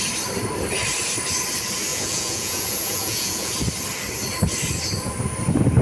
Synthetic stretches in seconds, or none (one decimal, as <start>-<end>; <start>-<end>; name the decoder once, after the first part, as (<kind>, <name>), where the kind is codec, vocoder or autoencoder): 1.9-3.5 (vocoder, Vocos)